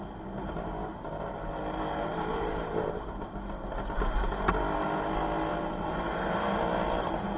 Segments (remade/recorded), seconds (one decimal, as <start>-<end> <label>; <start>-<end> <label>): 0.0-0.9 recorded; 0.9-1.6 remade; 1.6-2.3 recorded; 2.3-3.2 remade; 3.2-5.5 recorded; 5.5-6.3 remade; 6.3-7.4 recorded